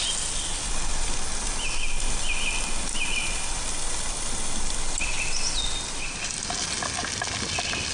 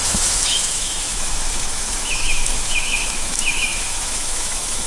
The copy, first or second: second